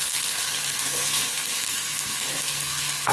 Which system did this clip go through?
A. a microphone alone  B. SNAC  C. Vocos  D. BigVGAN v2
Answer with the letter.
B